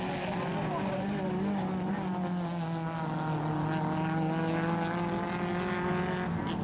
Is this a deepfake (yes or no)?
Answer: no